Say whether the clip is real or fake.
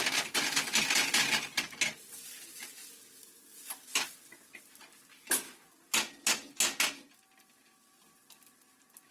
real